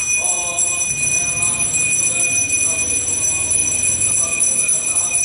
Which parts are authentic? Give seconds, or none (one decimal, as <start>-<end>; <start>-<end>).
0.0-3.6